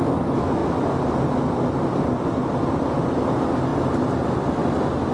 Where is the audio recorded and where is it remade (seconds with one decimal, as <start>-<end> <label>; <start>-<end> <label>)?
0.0-5.1 recorded